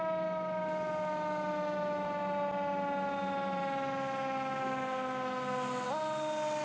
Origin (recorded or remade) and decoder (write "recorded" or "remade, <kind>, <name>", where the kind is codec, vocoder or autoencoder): recorded